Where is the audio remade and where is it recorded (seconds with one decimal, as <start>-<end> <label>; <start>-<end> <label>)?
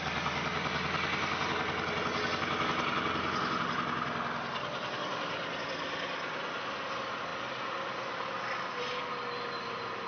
0.0-10.1 recorded